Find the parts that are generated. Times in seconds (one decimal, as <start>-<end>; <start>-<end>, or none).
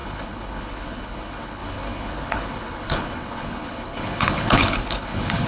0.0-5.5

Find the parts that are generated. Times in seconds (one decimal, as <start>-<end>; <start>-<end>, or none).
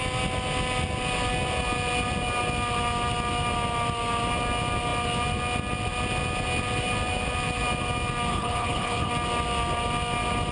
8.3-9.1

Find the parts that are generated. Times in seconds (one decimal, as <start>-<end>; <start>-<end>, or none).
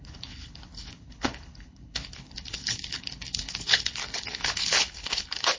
0.0-5.6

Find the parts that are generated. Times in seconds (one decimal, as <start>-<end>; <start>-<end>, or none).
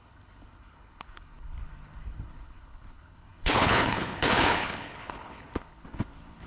0.0-6.5